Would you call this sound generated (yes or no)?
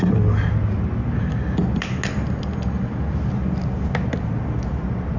no